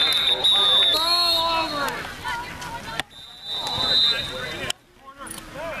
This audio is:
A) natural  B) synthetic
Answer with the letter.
A